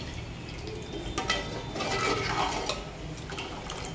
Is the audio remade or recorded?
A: recorded